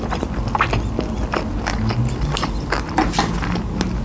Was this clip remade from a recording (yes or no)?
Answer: no